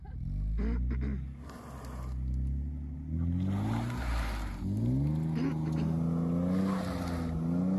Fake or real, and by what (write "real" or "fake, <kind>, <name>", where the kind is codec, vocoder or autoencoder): real